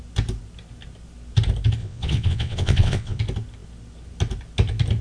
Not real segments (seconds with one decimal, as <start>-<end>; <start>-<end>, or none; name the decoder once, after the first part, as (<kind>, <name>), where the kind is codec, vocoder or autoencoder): 1.8-3.2 (vocoder, WaveNeXt)